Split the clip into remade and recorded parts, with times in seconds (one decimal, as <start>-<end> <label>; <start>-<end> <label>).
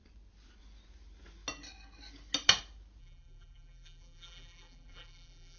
0.0-3.0 recorded; 3.0-5.6 remade